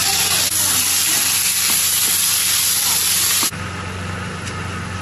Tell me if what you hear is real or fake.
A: real